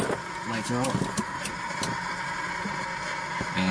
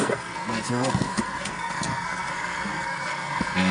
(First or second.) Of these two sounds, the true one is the first